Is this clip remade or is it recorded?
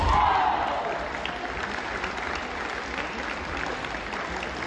recorded